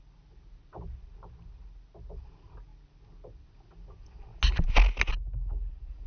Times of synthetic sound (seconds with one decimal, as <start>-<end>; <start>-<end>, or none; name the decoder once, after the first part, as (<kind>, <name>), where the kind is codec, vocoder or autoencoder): none